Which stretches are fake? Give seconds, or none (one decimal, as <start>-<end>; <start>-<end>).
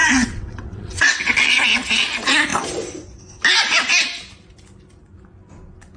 0.0-1.2